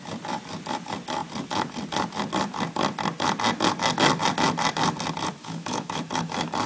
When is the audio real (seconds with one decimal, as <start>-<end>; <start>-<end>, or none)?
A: 0.0-5.4; 6.0-6.7